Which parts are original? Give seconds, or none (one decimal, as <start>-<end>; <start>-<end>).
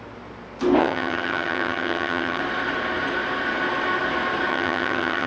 0.0-0.8; 2.4-4.5